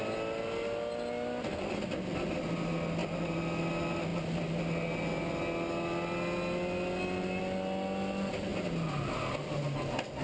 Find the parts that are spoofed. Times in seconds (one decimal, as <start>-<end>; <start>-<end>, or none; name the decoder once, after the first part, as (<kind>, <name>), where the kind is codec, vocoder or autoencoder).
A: none

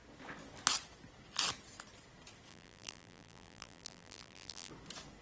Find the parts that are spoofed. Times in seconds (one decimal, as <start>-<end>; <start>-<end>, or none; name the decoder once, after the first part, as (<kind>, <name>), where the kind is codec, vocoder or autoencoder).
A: 2.5-4.7 (vocoder, BigVGAN v2)

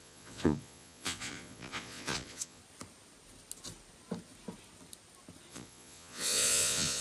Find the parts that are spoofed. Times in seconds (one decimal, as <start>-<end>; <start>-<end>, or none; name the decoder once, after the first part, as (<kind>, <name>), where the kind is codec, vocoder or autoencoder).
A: 0.0-2.6 (vocoder, Vocos); 5.5-7.0

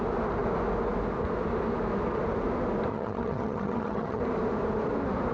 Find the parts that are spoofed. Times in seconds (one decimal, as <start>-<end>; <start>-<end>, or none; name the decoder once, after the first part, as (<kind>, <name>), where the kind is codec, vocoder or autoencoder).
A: 2.9-4.2 (vocoder, HiFi-GAN)

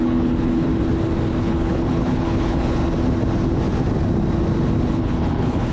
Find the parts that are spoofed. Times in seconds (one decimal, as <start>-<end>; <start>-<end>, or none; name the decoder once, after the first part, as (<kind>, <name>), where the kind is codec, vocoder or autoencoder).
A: 0.0-0.7 (codec, HILCodec); 1.4-2.8; 4.9-5.7